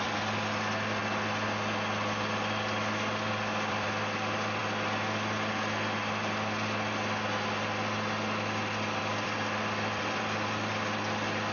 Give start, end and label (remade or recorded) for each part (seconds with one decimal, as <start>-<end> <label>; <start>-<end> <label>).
0.0-1.0 remade; 1.0-3.3 recorded; 3.3-4.6 remade; 4.6-9.0 recorded; 9.0-11.5 remade